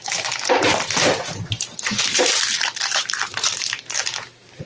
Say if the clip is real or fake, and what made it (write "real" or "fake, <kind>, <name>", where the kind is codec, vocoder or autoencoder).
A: fake, vocoder, BigVGAN v2